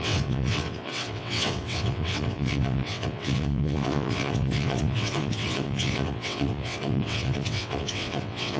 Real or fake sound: fake